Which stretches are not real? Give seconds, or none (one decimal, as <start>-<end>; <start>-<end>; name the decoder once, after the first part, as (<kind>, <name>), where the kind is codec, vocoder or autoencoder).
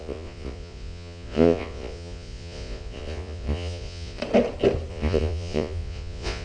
0.0-4.2 (vocoder, Vocos); 4.9-6.4